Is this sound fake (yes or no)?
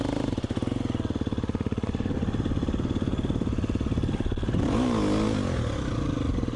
no